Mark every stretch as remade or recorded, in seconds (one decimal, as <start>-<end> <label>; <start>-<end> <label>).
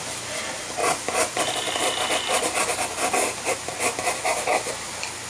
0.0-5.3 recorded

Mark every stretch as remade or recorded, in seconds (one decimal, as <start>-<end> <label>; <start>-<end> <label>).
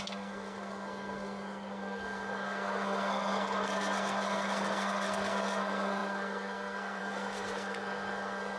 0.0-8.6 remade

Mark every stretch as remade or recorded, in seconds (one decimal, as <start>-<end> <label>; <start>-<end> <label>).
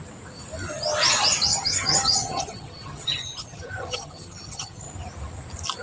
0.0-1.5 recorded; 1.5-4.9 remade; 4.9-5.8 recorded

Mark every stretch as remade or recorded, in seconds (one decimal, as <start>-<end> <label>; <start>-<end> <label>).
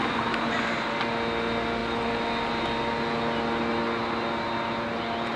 0.0-5.4 recorded